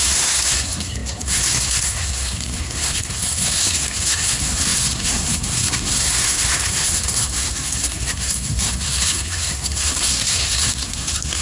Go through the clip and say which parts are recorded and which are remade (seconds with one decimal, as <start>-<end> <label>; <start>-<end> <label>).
0.0-11.4 remade